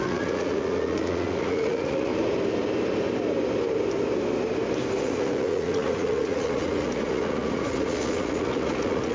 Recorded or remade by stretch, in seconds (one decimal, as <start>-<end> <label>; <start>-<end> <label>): 0.0-2.1 remade; 2.1-5.0 recorded; 5.0-9.1 remade